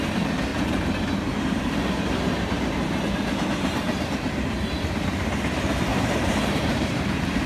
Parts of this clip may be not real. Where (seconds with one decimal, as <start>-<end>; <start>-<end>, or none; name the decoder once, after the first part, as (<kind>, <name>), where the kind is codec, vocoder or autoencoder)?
0.5-2.8 (vocoder, BigVGAN v2); 5.9-7.5